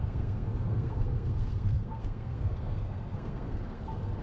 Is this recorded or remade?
remade